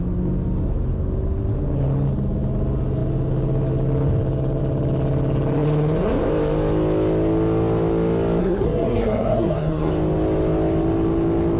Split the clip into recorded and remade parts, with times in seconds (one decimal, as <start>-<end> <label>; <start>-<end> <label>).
0.0-8.4 recorded; 8.4-9.9 remade; 9.9-11.6 recorded